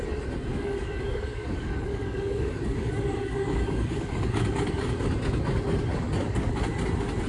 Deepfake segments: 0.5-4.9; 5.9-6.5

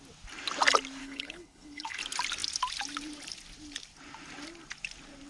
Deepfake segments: 1.0-2.0